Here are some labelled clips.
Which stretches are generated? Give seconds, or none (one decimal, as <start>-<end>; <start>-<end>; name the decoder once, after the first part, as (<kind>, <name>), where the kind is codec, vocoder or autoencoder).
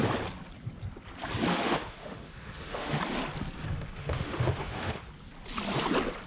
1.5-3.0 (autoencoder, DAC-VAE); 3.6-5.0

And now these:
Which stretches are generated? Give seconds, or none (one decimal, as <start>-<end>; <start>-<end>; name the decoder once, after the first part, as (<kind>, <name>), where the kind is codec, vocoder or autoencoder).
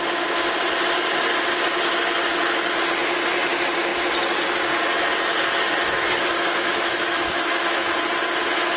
6.5-8.0 (autoencoder, DAC-VAE)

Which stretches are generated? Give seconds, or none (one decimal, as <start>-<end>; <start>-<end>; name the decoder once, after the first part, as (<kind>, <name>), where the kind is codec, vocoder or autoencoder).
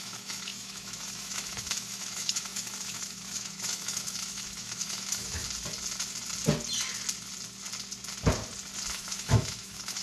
0.0-5.4 (autoencoder, DAC-VAE); 8.9-10.0